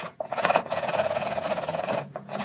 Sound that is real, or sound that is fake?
fake